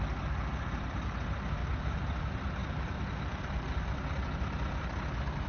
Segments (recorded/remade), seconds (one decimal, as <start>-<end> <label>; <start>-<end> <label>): 0.0-5.5 recorded